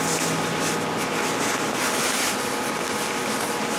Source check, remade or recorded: recorded